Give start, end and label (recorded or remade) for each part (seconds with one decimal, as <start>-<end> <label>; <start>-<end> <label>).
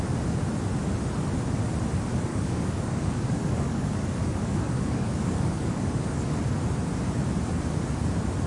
0.0-2.3 recorded; 2.3-6.4 remade; 6.4-8.5 recorded